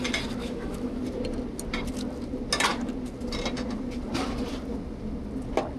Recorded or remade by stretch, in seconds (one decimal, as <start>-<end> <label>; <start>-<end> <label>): 0.0-0.4 recorded; 0.4-1.0 remade; 1.0-5.8 recorded